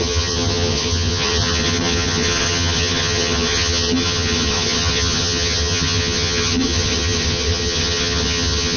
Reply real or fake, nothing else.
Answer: fake